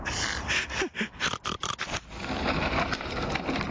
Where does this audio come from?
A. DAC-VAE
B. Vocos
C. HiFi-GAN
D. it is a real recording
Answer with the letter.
D